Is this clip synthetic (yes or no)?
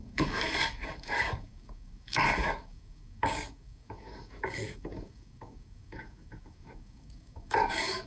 yes